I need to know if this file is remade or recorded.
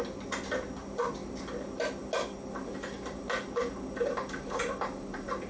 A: recorded